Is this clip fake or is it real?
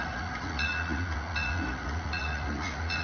fake